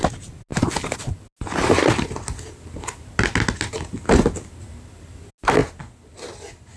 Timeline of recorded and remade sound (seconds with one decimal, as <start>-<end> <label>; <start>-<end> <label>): 0.0-6.8 recorded